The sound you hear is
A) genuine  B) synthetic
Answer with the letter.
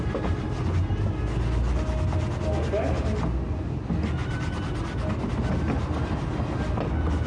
A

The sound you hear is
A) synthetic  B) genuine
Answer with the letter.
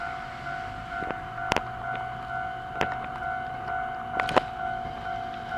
B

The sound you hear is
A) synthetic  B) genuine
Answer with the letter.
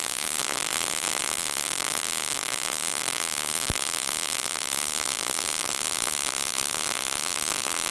A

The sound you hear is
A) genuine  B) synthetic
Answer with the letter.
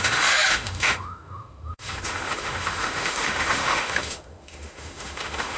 B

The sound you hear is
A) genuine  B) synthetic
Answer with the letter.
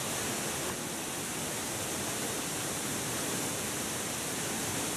A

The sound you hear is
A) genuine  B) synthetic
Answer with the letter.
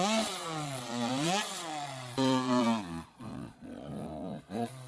B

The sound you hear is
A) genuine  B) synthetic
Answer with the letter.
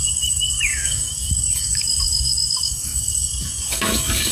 B